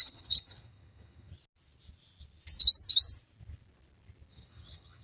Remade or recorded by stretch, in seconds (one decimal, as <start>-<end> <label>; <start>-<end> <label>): 0.0-1.3 remade; 1.3-4.3 recorded; 4.3-5.0 remade